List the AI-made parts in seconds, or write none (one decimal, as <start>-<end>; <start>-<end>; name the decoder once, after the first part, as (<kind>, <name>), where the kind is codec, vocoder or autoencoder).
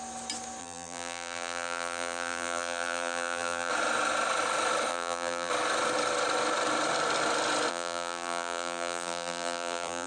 0.6-3.7 (vocoder, BigVGAN v2); 4.9-5.5; 7.7-10.1